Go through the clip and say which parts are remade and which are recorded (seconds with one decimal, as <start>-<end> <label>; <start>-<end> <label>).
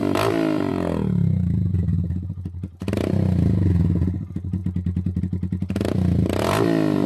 0.0-7.1 recorded